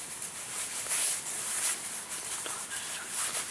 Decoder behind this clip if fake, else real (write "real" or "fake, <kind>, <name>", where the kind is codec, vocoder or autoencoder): real